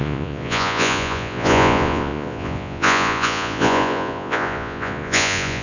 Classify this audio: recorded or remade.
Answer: remade